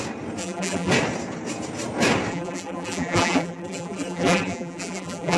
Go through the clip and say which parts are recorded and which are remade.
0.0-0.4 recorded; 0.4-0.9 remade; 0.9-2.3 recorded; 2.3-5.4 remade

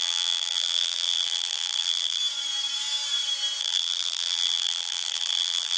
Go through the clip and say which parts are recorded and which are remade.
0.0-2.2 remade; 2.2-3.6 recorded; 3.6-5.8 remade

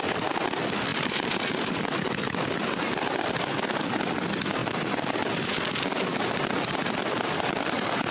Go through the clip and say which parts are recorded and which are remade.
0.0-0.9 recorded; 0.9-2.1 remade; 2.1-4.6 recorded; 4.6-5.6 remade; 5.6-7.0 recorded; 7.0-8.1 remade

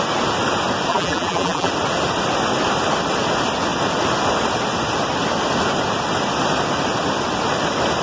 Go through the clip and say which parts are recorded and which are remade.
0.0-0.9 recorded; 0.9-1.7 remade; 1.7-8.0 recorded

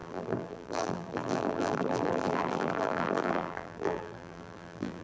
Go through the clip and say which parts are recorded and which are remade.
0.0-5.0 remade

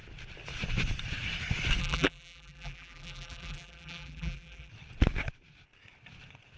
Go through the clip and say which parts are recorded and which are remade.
0.0-1.8 recorded; 1.8-4.7 remade; 4.7-6.6 recorded

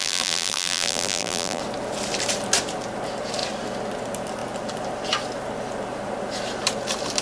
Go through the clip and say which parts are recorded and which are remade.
0.0-1.6 remade; 1.6-7.2 recorded